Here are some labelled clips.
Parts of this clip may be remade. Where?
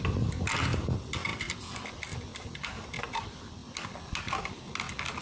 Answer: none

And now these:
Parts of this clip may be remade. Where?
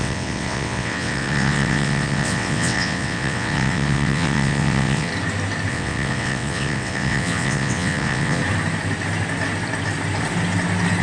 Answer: 0.0-5.1 (vocoder, WaveNeXt); 5.7-8.4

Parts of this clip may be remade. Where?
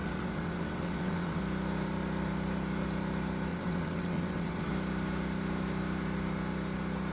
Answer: 0.0-1.4 (vocoder, WaveNeXt); 3.5-4.7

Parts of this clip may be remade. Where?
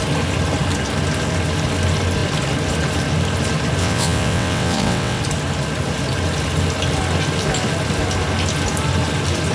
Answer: 3.8-5.2 (vocoder, WaveNeXt)